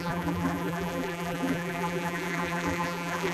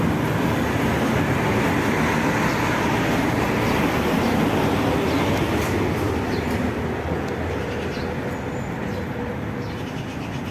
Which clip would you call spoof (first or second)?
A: first